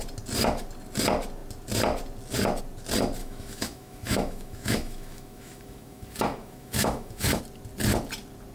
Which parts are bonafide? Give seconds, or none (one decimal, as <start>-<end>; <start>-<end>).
0.0-3.2; 7.4-8.5